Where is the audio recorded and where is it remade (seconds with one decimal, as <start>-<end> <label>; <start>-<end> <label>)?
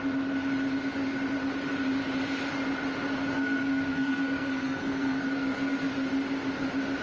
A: 0.0-3.3 recorded; 3.3-5.9 remade; 5.9-7.0 recorded